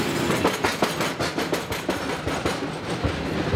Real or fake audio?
real